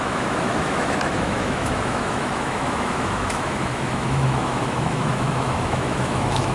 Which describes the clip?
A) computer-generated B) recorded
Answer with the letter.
A